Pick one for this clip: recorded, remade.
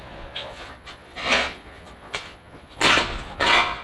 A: remade